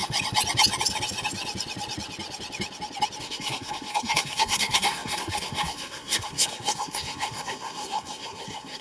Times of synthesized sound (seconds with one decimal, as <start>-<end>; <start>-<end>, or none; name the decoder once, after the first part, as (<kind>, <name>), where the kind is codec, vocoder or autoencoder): 3.2-8.8 (codec, SNAC)